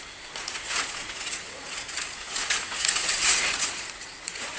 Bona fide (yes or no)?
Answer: no